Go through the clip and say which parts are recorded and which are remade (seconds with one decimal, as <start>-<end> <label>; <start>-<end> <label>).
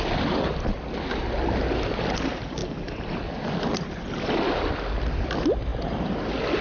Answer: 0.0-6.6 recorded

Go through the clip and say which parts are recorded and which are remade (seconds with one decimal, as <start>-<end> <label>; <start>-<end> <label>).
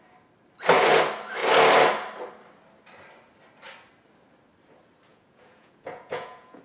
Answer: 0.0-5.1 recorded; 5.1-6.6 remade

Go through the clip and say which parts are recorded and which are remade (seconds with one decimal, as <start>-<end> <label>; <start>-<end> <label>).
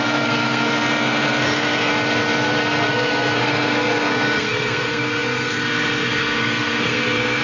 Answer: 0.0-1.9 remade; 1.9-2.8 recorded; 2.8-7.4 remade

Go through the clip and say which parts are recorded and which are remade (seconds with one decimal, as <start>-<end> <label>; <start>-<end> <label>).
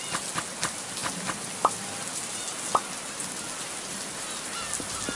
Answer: 0.0-5.2 recorded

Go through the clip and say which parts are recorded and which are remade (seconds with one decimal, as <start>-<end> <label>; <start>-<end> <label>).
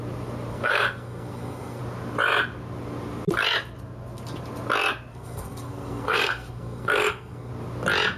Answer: 0.0-0.5 recorded; 0.5-1.8 remade; 1.8-5.1 recorded; 5.1-7.5 remade; 7.5-8.2 recorded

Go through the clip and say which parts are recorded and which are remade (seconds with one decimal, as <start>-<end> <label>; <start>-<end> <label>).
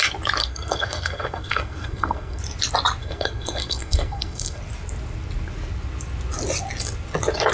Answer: 0.0-0.4 recorded; 0.4-2.4 remade; 2.4-3.0 recorded; 3.0-4.6 remade; 4.6-7.5 recorded